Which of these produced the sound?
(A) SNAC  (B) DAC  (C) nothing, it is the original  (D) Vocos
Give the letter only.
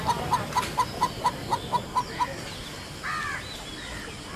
C